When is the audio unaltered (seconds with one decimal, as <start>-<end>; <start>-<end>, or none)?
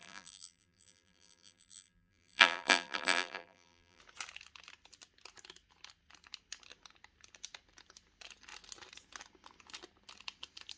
4.0-10.8